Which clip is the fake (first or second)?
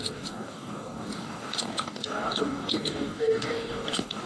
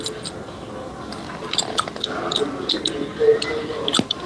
first